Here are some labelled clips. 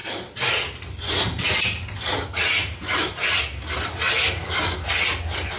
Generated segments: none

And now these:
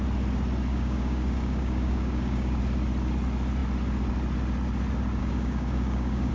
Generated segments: 0.7-2.6; 5.2-6.3

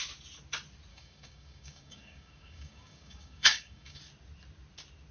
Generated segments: 0.9-4.0

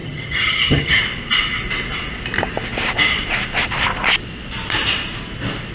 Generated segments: 0.0-1.0

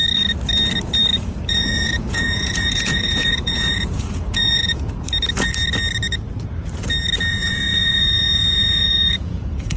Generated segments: 1.5-4.9; 7.3-9.8

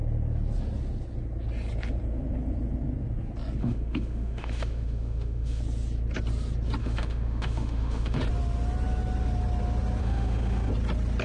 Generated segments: 3.6-5.6; 6.8-8.2; 10.0-10.7

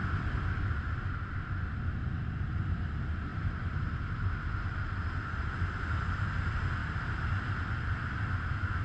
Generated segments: 6.8-7.4

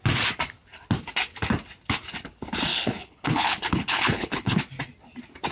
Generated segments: 2.7-4.6